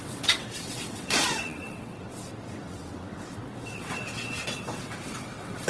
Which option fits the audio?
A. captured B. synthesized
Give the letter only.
B